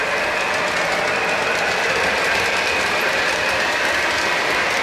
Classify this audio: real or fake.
real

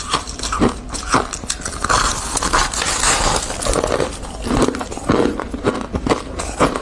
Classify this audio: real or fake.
real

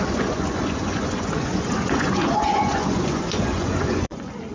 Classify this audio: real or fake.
fake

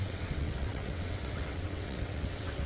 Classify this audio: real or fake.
fake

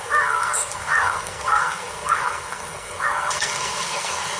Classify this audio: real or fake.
fake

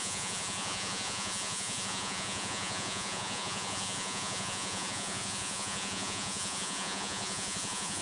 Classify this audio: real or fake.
fake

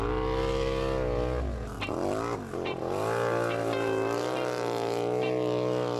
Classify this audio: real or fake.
real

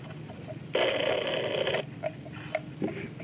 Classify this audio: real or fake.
real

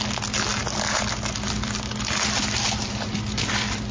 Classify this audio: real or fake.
real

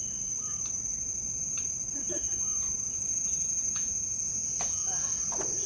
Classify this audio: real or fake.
real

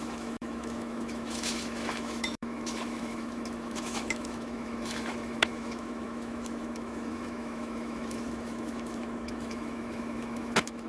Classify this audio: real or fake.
fake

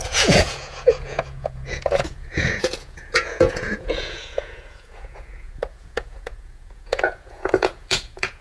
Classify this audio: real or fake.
fake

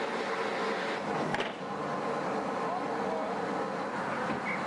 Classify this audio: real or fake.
real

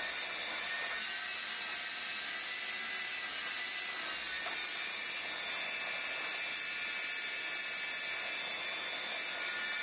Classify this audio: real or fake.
real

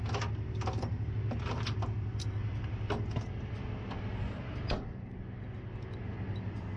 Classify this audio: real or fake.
real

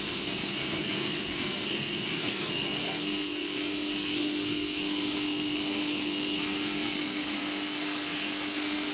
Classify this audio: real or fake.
fake